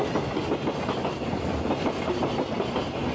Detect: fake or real real